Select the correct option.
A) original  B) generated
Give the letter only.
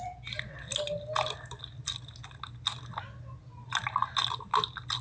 A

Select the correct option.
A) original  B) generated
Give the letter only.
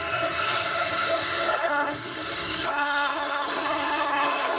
B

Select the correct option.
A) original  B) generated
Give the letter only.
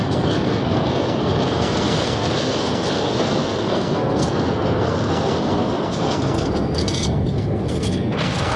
B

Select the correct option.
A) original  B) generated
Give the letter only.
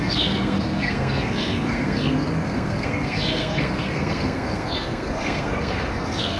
B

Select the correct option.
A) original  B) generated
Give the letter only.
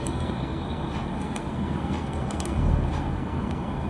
B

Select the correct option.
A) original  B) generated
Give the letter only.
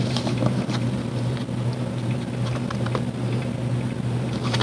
A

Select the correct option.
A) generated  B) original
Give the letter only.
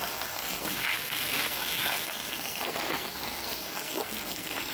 A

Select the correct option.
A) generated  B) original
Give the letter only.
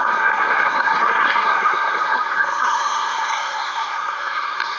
A